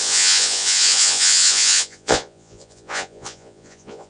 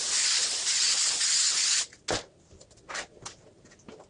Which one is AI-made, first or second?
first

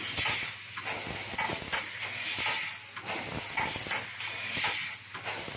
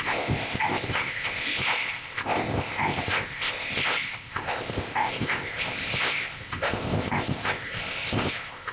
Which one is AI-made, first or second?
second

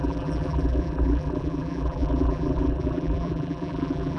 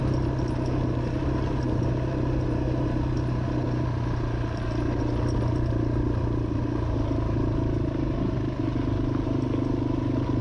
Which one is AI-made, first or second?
first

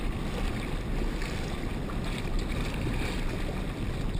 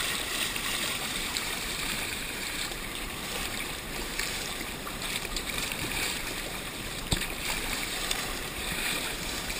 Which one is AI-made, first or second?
second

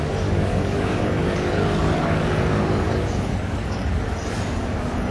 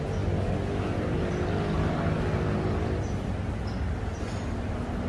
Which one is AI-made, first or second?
first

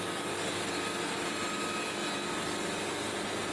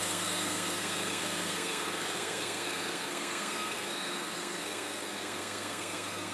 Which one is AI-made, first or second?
second